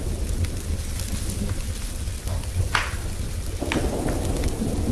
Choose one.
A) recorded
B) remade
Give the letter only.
A